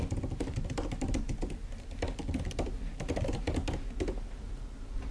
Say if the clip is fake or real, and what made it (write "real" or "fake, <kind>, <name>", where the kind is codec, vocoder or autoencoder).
real